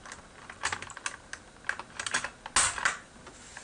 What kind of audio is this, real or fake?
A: real